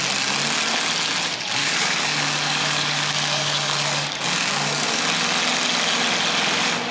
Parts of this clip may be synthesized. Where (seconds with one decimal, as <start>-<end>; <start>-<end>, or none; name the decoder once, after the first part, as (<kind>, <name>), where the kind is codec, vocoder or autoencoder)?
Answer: 1.6-5.0 (codec, DAC)